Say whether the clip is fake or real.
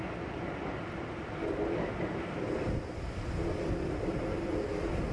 real